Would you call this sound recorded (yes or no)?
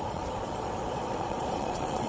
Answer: no